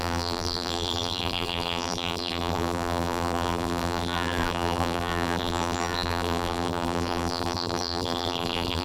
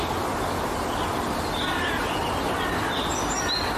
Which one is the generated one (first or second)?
first